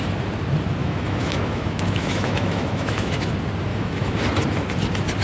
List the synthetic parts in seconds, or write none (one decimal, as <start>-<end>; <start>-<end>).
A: 0.8-3.3; 3.7-4.2